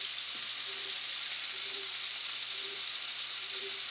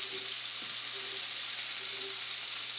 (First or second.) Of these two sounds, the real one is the second